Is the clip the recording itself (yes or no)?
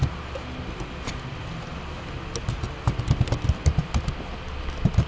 yes